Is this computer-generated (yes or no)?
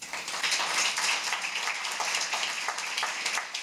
no